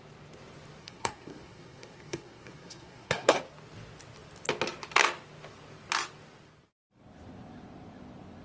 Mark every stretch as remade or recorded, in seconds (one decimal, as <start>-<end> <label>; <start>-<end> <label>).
0.0-0.8 recorded; 0.8-3.4 remade; 3.4-8.4 recorded